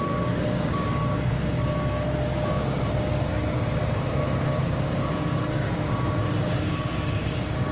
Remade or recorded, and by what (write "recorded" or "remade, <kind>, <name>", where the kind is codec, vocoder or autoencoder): remade, codec, DAC